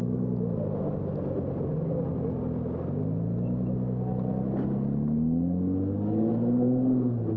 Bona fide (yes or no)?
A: yes